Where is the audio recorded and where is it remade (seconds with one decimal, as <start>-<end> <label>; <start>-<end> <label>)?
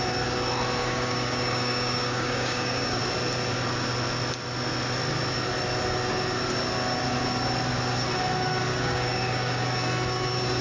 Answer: 0.0-0.8 recorded; 0.8-3.0 remade; 3.0-8.7 recorded; 8.7-9.6 remade; 9.6-10.6 recorded